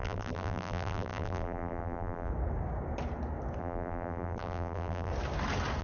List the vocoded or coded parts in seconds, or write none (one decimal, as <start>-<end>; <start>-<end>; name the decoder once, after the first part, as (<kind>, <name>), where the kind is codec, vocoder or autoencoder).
0.0-2.3 (vocoder, BigVGAN v2); 3.6-5.1